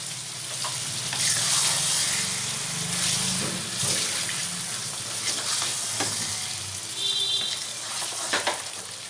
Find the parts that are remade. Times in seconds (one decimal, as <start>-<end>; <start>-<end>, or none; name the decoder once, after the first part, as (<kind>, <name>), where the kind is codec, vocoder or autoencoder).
7.7-8.3 (vocoder, Vocos)

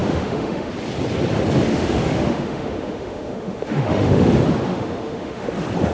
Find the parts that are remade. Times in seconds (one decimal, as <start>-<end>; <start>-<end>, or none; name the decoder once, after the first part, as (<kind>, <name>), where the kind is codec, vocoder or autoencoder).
0.0-0.7 (autoencoder, DAC-VAE); 1.7-4.3; 4.7-5.5

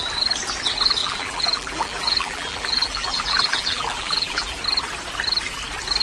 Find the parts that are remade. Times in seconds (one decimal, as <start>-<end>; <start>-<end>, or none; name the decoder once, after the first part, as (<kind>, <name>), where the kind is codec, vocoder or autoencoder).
1.0-4.6 (vocoder, BigVGAN v2)

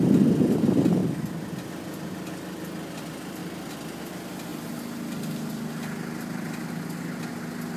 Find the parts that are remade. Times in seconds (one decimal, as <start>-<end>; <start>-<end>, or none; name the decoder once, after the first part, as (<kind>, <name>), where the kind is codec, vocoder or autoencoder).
none

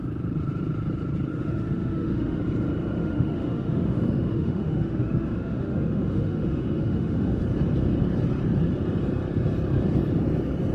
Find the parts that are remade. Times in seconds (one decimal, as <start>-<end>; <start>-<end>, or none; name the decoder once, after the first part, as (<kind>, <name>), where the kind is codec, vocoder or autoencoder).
1.3-2.4 (autoencoder, DAC-VAE); 3.0-7.4

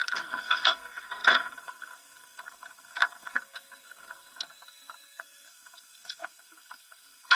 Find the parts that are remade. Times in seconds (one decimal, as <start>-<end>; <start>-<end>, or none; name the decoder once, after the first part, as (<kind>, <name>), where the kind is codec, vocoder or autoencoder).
0.0-7.3 (codec, SNAC)

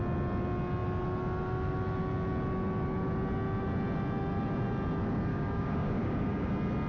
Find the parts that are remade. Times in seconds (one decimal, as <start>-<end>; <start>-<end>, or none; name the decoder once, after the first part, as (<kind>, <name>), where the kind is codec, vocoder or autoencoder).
5.3-6.5 (codec, DAC)